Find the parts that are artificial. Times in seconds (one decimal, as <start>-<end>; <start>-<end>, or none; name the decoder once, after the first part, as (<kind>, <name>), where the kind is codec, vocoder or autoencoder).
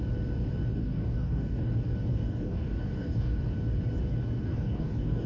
0.7-1.7 (codec, DAC); 2.1-3.4; 4.5-5.3